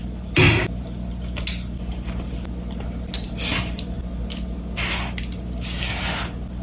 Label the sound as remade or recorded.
recorded